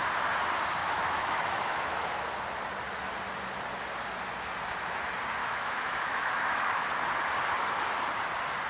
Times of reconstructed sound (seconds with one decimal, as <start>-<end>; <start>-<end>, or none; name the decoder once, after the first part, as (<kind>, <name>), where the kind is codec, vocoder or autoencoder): 0.8-2.2 (autoencoder, DAC-VAE); 5.4-6.9